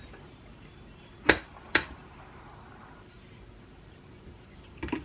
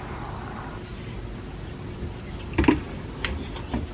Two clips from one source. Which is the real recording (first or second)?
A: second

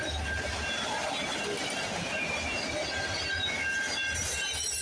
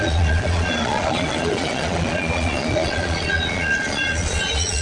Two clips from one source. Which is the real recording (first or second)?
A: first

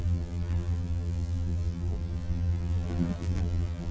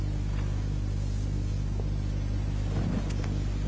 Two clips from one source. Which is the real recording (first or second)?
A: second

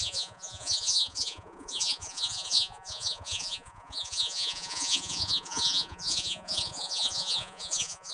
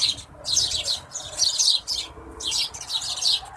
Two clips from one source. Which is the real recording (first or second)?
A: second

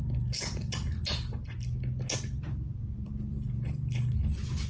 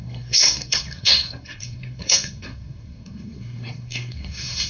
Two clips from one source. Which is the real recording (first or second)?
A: first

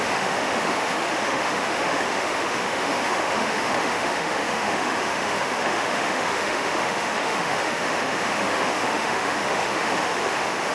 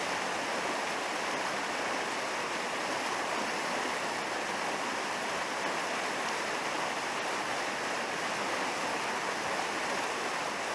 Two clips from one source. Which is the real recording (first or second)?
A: second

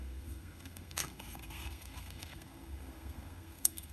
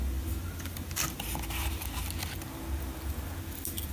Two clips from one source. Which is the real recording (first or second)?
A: second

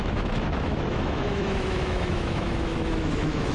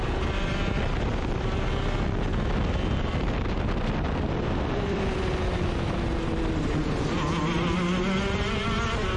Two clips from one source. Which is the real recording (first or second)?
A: second